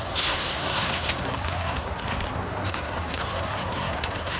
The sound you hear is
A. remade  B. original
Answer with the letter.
A